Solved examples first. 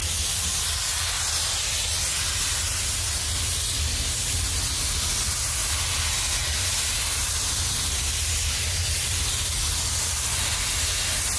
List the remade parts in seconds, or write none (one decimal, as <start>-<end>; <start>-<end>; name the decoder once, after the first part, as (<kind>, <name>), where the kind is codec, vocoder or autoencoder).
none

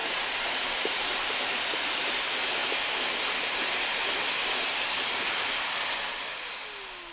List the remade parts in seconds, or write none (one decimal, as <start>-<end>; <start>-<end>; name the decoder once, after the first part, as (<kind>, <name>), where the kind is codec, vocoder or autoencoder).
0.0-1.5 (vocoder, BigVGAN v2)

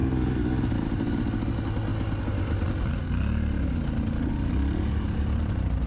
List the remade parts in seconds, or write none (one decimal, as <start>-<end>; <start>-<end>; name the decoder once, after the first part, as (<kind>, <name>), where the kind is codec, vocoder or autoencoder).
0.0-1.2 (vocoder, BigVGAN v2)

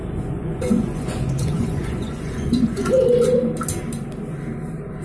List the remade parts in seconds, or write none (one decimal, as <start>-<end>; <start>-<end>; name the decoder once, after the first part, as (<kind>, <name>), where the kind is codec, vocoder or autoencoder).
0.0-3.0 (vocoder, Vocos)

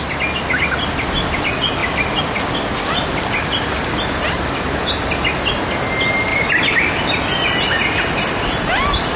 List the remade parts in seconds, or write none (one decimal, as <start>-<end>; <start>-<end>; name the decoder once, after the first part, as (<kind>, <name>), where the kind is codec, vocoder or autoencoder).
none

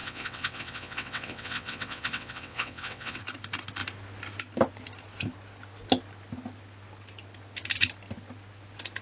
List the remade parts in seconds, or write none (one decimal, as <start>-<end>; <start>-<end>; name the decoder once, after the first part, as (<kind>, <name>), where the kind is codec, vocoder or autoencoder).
0.0-3.2 (vocoder, WaveNeXt)

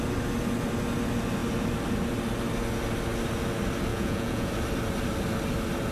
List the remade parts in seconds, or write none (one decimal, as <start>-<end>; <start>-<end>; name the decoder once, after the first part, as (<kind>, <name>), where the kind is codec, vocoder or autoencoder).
3.9-4.5 (vocoder, Vocos)

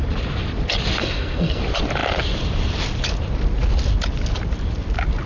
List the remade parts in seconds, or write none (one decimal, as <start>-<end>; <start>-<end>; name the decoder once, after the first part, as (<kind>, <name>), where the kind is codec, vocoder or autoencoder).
1.0-1.6 (codec, SNAC)